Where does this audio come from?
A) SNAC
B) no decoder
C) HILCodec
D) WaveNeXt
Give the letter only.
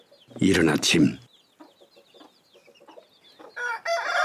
B